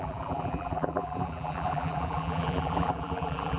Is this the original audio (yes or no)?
no